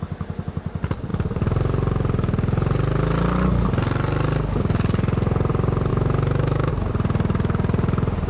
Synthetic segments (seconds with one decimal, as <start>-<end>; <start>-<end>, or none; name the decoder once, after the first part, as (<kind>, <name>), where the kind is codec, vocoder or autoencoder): 5.9-6.7 (autoencoder, DAC-VAE)

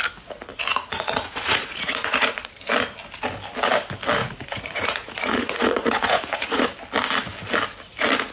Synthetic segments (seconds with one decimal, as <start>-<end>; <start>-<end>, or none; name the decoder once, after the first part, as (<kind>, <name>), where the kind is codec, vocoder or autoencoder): 0.5-2.5 (vocoder, Vocos); 4.2-6.6